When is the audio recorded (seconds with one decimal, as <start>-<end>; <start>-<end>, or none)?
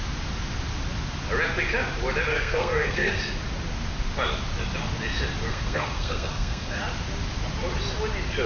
0.0-2.3; 3.2-5.5; 6.8-8.5